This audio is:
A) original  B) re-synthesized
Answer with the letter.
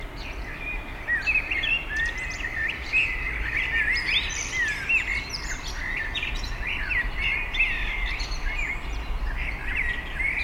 A